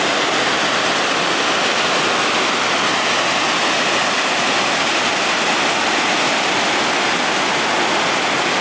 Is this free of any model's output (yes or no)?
yes